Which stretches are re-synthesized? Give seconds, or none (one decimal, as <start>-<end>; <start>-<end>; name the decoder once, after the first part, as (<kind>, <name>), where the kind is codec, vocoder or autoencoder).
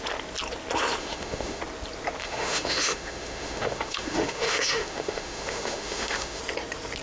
1.0-1.6 (autoencoder, DAC-VAE); 2.2-6.4